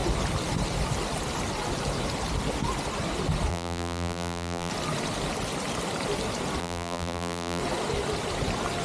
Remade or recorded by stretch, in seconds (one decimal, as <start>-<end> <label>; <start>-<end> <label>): 0.0-3.5 recorded; 3.5-4.7 remade; 4.7-6.6 recorded; 6.6-7.6 remade; 7.6-8.8 recorded